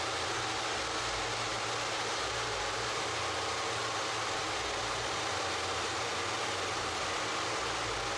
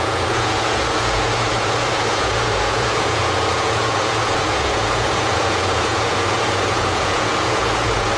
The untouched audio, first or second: first